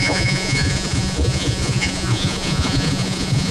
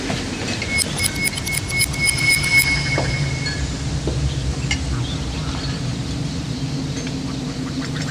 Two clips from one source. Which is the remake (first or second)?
first